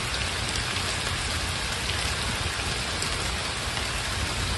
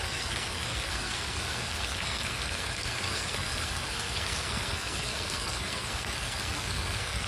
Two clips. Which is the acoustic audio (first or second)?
first